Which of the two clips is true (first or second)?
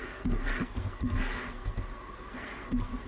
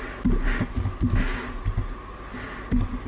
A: second